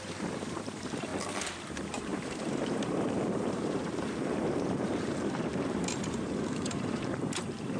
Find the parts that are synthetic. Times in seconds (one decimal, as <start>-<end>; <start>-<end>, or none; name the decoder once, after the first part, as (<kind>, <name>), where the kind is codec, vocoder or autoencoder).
0.0-1.1 (vocoder, BigVGAN v2); 1.7-7.8